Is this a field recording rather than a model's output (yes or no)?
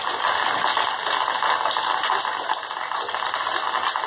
yes